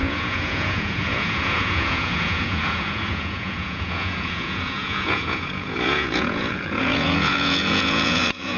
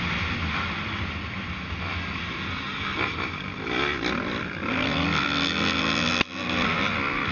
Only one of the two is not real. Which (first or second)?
first